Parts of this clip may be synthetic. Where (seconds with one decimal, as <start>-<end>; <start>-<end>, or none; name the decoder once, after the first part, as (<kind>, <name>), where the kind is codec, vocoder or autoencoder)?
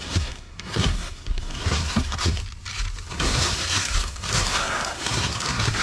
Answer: 0.0-2.4 (codec, SNAC); 3.1-5.8